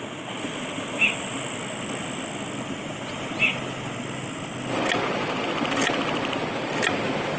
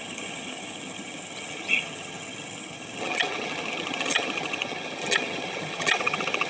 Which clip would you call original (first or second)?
first